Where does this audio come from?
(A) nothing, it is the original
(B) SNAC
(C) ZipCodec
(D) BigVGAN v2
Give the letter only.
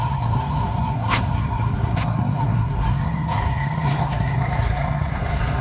B